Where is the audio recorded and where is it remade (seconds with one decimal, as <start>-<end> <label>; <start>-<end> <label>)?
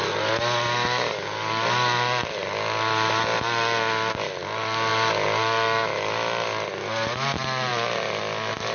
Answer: 0.0-8.7 recorded